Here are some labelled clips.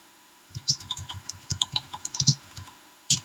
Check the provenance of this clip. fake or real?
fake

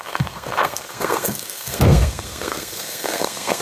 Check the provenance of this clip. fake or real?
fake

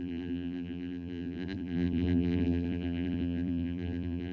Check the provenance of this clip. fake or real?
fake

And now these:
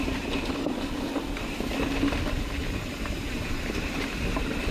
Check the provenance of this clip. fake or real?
real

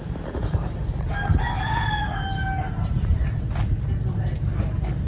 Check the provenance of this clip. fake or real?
real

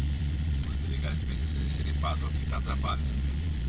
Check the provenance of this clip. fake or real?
fake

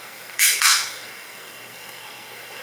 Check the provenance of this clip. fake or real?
fake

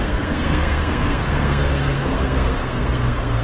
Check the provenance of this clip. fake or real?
fake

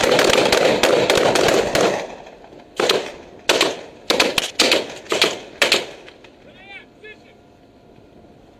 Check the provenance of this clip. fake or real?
real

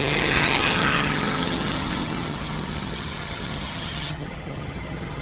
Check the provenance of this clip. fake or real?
fake